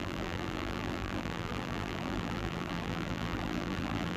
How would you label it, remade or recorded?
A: remade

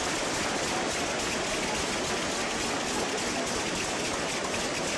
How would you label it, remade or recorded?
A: recorded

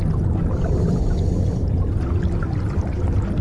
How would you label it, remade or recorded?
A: recorded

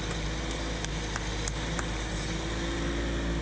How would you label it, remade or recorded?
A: recorded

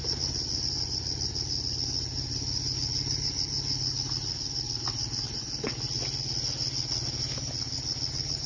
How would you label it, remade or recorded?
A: recorded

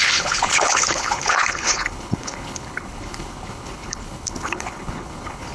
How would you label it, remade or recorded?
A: remade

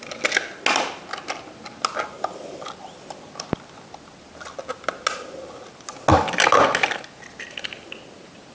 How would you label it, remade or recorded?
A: recorded